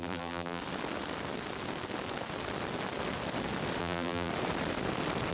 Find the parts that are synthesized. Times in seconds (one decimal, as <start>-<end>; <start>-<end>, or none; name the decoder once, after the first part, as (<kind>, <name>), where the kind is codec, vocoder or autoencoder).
0.0-0.6 (vocoder, BigVGAN v2); 3.8-4.3